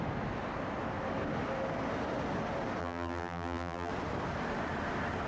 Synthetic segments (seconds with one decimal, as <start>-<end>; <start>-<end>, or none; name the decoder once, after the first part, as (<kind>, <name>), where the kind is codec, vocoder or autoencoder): 2.8-3.9 (vocoder, BigVGAN v2)